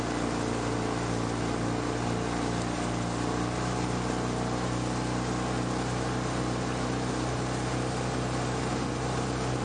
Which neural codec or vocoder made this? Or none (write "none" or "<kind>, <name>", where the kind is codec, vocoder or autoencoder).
none